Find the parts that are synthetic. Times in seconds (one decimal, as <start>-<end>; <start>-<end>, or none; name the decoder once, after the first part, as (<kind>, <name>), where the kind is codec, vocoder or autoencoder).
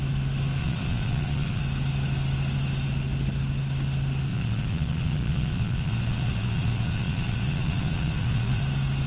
0.6-1.6 (vocoder, Vocos); 4.3-8.6